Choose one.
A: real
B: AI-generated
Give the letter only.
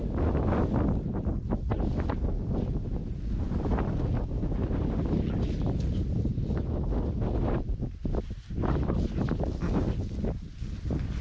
A